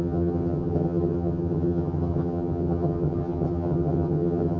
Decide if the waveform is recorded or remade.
remade